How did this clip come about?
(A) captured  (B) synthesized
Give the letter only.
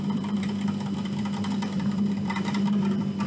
B